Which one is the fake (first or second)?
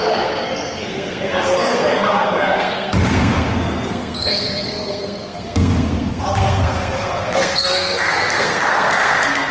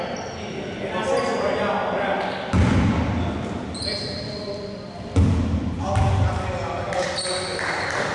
first